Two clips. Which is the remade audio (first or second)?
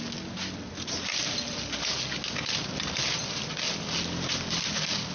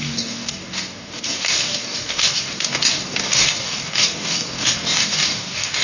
second